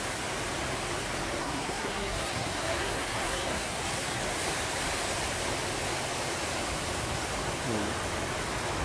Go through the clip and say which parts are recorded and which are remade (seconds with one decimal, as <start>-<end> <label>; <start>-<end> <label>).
0.0-1.4 recorded; 1.4-4.2 remade; 4.2-8.8 recorded